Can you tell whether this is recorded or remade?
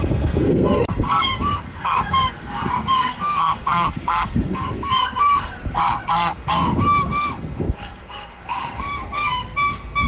remade